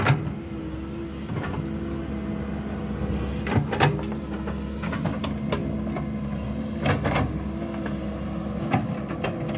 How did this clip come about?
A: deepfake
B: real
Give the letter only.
B